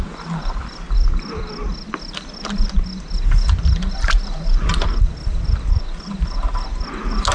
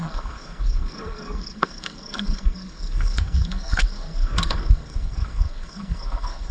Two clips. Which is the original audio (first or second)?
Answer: first